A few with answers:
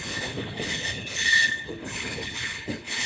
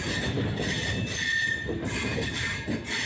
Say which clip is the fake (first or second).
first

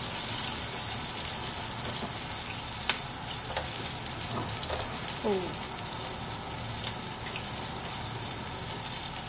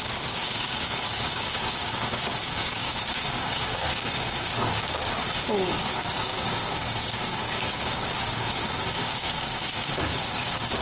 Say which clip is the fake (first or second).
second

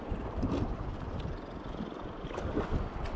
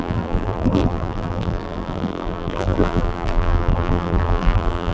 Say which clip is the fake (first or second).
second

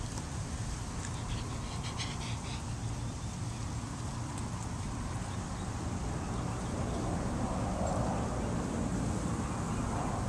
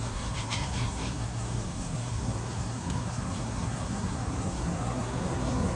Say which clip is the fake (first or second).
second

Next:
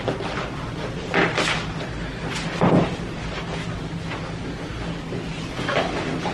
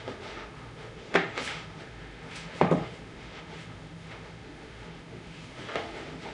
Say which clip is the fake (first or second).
second